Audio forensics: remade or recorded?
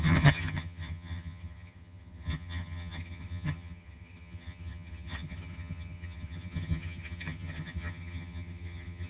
remade